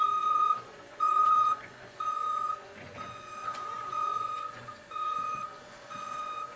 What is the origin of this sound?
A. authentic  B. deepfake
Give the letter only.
B